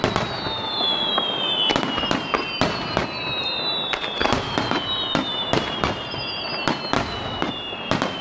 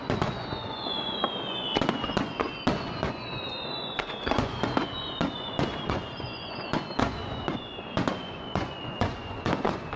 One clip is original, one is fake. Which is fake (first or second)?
second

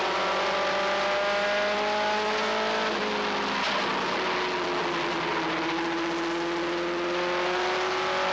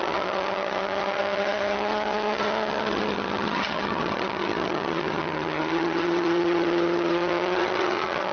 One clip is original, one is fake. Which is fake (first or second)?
second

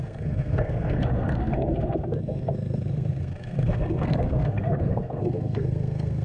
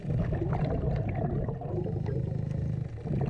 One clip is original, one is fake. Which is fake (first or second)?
first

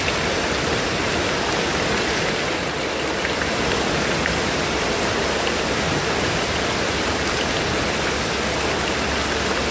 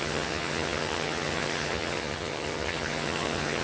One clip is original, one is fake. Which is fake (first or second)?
second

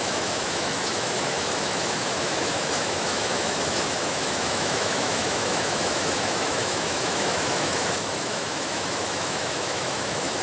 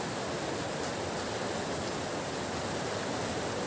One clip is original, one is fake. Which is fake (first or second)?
first